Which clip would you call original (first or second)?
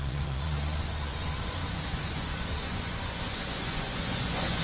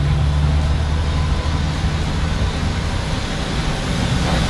second